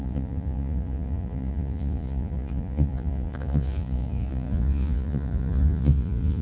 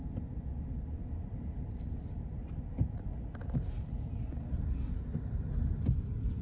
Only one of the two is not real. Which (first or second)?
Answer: first